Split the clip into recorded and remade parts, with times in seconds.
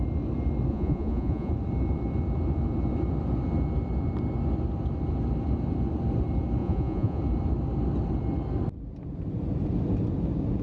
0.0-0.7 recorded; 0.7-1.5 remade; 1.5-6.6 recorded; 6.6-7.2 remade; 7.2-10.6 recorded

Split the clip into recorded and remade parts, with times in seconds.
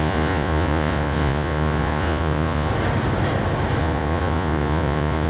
0.0-2.7 remade; 2.7-3.8 recorded; 3.8-5.3 remade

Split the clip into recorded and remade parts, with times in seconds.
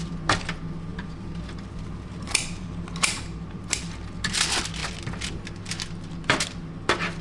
0.0-0.9 recorded; 0.9-3.8 remade; 3.8-7.2 recorded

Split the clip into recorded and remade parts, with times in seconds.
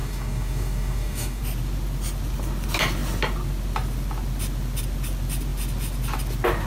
0.0-1.4 remade; 1.4-6.7 recorded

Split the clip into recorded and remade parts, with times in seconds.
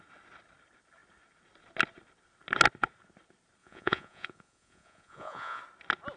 0.0-3.6 recorded; 3.6-5.6 remade; 5.6-6.2 recorded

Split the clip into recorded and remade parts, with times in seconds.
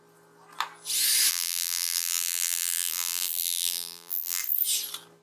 0.0-1.3 recorded; 1.3-4.4 remade; 4.4-5.2 recorded